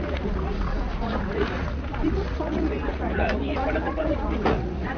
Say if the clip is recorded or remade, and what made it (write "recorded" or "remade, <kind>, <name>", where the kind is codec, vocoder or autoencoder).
remade, vocoder, Vocos